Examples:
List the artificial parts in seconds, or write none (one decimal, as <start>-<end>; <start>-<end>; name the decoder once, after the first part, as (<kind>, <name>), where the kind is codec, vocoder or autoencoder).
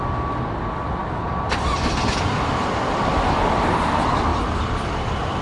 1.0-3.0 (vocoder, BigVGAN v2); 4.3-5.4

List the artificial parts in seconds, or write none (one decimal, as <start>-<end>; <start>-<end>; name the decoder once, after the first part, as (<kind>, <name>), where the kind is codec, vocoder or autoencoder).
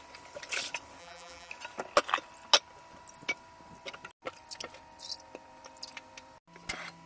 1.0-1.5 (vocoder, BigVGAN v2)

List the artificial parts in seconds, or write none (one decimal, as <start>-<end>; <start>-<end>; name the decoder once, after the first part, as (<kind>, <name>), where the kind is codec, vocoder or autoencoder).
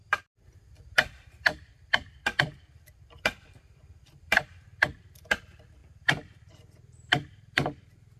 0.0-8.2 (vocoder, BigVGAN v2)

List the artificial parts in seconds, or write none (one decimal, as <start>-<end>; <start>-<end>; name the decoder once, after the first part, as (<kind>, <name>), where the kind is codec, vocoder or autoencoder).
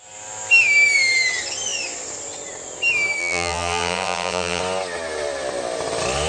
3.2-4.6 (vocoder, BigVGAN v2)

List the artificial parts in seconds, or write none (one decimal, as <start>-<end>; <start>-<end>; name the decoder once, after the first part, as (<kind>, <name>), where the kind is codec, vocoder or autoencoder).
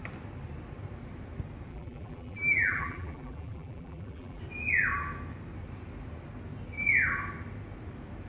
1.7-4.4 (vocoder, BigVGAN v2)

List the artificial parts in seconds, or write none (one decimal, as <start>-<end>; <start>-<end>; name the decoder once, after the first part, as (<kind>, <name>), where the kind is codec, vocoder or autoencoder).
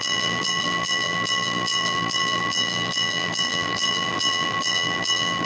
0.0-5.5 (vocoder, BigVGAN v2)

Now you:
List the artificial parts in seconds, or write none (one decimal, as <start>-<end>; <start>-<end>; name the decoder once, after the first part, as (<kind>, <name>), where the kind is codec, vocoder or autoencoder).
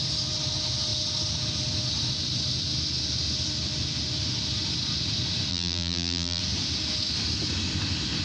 5.5-6.4 (vocoder, BigVGAN v2)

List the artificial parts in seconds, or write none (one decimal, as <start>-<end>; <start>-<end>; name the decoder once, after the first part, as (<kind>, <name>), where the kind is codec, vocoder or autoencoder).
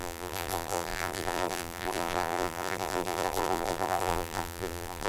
0.0-5.1 (vocoder, BigVGAN v2)